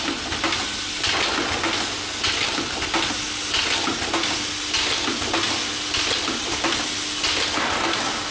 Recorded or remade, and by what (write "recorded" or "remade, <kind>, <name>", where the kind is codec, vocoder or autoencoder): recorded